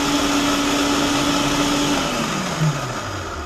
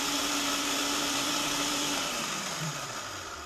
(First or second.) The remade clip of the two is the second